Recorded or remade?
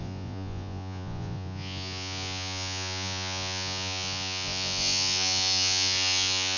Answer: remade